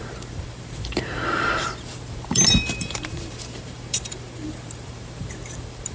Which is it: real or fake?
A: fake